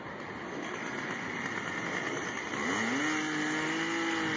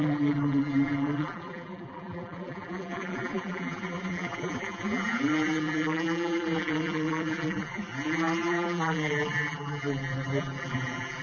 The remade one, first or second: second